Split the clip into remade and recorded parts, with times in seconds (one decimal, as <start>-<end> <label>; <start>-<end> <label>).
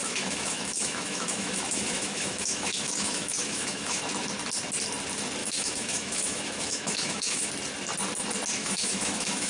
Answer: 0.0-4.0 remade; 4.0-5.4 recorded; 5.4-7.5 remade; 7.5-8.6 recorded; 8.6-9.5 remade